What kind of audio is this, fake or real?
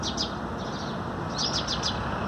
real